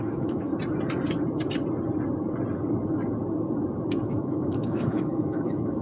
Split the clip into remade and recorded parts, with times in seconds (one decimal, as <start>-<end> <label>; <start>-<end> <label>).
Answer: 0.0-0.5 remade; 0.5-4.0 recorded; 4.0-5.8 remade